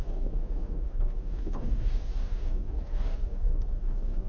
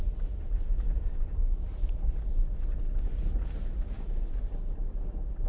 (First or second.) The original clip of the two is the second